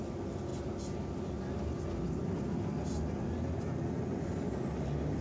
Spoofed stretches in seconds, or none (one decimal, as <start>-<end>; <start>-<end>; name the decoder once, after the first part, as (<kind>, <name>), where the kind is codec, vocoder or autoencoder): none